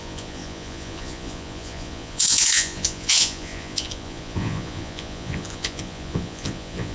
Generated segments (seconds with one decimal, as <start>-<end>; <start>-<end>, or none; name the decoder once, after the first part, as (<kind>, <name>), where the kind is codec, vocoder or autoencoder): 0.0-6.9 (vocoder, Vocos)